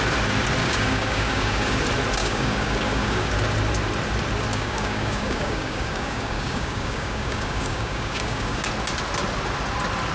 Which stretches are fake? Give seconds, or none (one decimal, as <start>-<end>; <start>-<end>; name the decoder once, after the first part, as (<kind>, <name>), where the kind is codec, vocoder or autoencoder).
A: 0.6-1.8 (codec, DAC); 2.2-3.3; 4.5-8.7